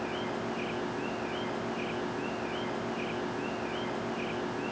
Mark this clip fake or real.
real